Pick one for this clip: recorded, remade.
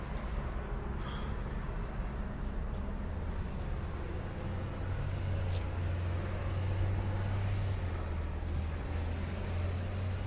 recorded